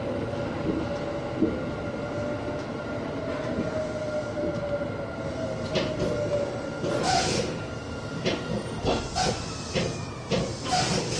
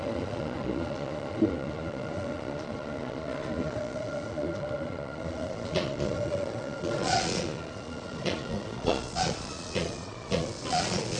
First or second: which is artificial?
second